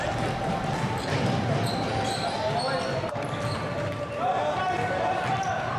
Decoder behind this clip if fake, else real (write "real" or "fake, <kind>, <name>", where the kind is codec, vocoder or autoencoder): real